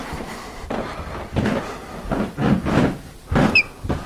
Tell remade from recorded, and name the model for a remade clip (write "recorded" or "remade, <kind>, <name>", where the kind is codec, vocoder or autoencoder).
recorded